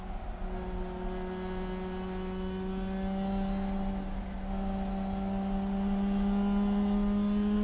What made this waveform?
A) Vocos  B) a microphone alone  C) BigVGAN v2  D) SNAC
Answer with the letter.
B